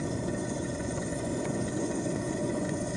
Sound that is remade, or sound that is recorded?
remade